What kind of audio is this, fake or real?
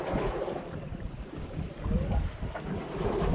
fake